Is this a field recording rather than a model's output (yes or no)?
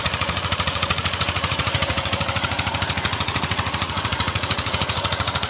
no